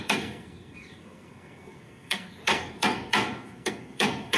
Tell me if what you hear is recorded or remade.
remade